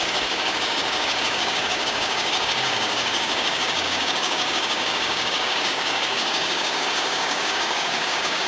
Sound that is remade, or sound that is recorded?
remade